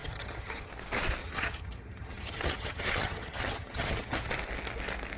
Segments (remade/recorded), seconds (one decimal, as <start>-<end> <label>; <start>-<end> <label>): 0.0-0.7 remade; 0.7-1.2 recorded; 1.2-4.3 remade; 4.3-5.2 recorded